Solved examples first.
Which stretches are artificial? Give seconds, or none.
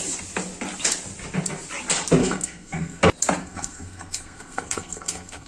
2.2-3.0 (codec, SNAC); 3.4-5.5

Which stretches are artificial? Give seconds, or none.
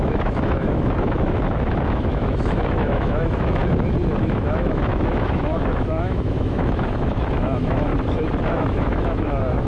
0.0-3.6 (autoencoder, DAC-VAE); 4.2-7.9; 8.5-9.7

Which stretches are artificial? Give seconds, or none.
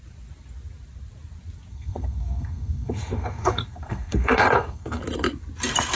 1.7-5.0 (codec, SNAC)